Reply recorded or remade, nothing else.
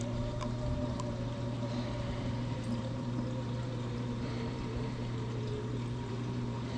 remade